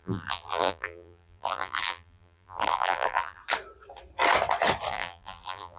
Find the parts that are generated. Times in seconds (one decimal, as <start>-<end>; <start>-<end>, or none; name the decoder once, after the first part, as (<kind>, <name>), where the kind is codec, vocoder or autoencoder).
0.0-3.4 (vocoder, BigVGAN v2); 4.9-5.8